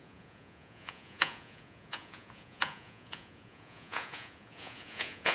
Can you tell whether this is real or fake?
fake